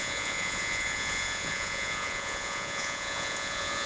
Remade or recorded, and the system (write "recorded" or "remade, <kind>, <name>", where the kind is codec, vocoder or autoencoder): remade, vocoder, Vocos